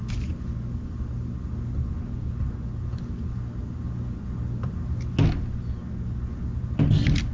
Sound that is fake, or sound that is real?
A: real